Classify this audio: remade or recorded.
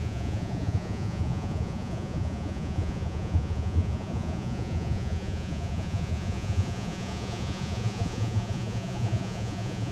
remade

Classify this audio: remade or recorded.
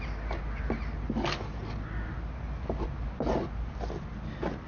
recorded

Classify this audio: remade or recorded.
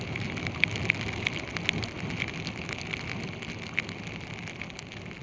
recorded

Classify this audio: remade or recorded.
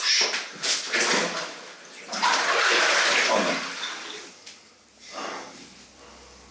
recorded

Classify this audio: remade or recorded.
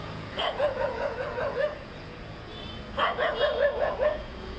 remade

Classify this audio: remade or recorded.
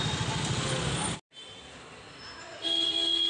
recorded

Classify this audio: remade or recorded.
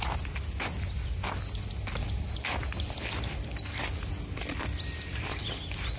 recorded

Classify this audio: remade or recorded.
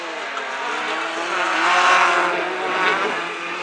recorded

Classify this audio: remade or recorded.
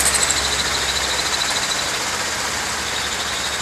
recorded